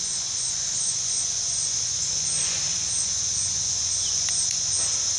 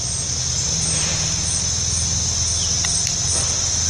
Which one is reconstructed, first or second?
first